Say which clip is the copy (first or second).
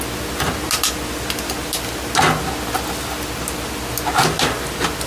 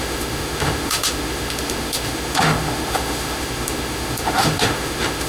second